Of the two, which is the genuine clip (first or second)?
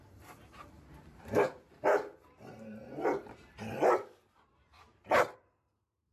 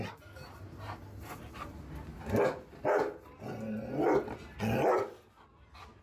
second